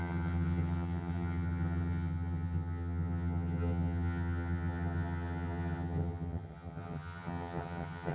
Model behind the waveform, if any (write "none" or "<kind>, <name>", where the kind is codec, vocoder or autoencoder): vocoder, HiFi-GAN